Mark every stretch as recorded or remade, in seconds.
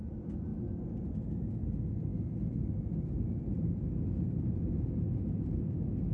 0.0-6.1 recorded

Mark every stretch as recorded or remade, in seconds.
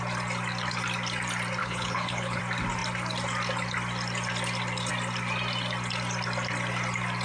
0.0-1.6 recorded; 1.6-2.4 remade; 2.4-7.2 recorded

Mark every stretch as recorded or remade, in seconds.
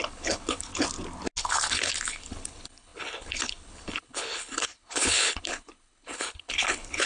0.0-0.7 remade; 0.7-1.4 recorded; 1.4-7.1 remade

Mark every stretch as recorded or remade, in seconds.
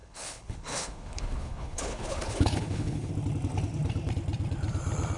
0.0-3.1 remade; 3.1-5.2 recorded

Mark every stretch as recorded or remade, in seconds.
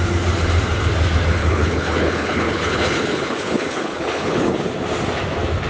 0.0-1.4 recorded; 1.4-4.6 remade; 4.6-5.7 recorded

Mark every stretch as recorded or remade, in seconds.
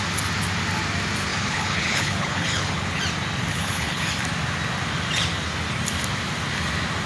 0.0-1.3 recorded; 1.3-3.0 remade; 3.0-3.5 recorded; 3.5-4.1 remade; 4.1-7.1 recorded